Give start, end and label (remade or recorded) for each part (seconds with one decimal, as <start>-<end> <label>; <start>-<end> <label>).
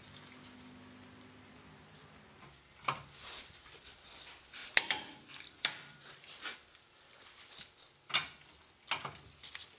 0.0-9.8 recorded